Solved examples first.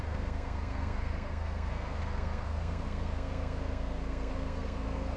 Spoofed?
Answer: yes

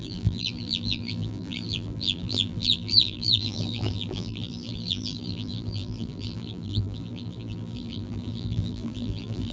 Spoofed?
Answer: yes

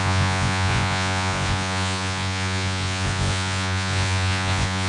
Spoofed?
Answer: yes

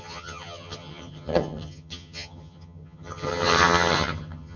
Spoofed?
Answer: yes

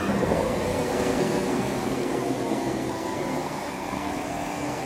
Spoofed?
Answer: yes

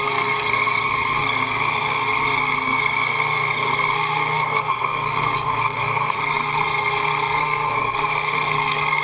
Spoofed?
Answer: yes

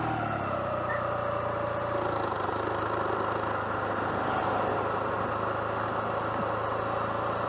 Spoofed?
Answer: no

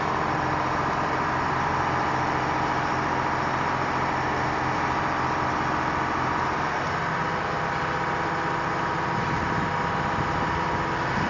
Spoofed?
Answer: no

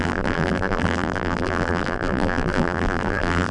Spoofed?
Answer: yes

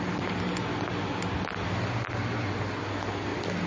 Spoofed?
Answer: no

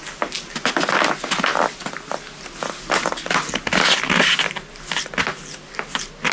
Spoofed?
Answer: no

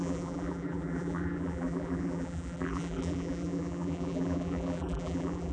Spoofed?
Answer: yes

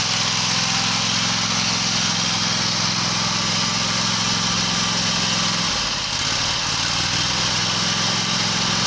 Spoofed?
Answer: no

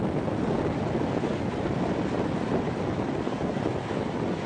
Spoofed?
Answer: no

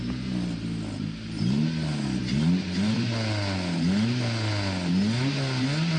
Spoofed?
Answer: no